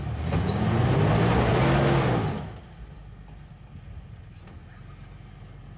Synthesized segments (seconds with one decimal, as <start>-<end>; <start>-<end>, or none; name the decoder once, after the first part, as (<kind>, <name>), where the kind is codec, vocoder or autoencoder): none